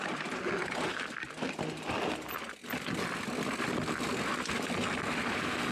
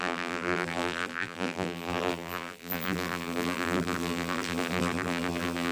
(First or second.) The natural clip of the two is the first